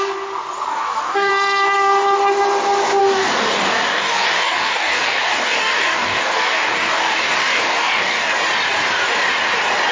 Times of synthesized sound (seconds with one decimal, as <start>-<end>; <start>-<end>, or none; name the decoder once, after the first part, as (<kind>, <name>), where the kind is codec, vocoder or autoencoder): 0.7-1.3 (codec, DAC); 3.0-8.3